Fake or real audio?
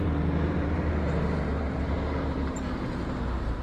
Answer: fake